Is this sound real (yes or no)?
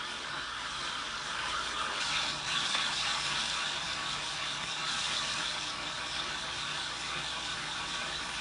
no